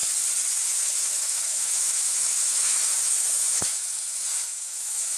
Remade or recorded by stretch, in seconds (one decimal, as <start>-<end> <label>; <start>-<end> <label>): 0.0-0.5 recorded; 0.5-5.2 remade